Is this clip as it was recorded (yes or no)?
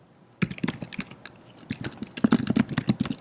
yes